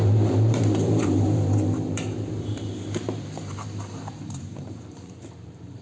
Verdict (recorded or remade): remade